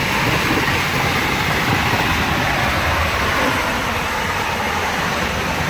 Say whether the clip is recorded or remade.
recorded